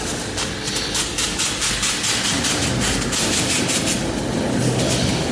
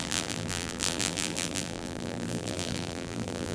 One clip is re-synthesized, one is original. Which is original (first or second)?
first